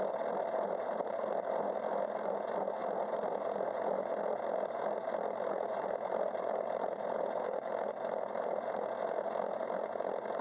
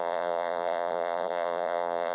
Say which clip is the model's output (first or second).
second